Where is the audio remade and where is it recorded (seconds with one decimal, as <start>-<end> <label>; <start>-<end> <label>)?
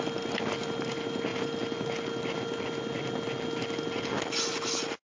0.0-5.2 recorded